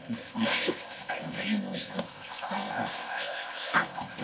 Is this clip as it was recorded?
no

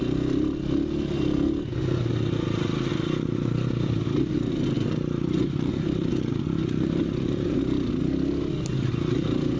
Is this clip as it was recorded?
yes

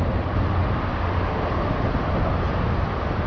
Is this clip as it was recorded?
yes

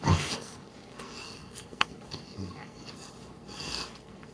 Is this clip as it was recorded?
no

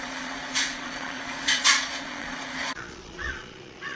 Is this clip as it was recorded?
no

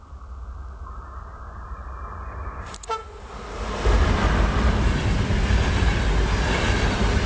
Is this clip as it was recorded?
yes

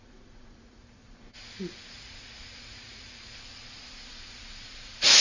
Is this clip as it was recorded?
no